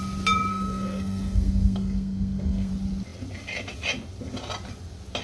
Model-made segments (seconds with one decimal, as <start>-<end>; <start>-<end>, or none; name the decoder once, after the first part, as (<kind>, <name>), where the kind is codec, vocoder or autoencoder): 0.5-2.7 (codec, SNAC)